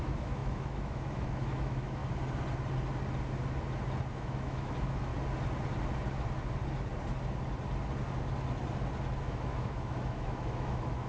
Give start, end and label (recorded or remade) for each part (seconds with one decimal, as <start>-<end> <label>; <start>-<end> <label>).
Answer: 0.0-2.0 remade; 2.0-4.1 recorded; 4.1-5.1 remade; 5.1-9.2 recorded; 9.2-11.1 remade